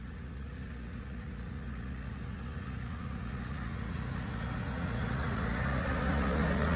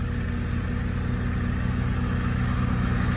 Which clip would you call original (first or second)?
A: second